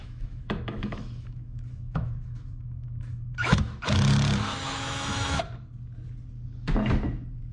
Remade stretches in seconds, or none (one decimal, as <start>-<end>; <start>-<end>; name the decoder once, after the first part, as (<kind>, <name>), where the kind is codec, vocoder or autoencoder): 0.0-3.8 (autoencoder, DAC-VAE); 4.5-5.4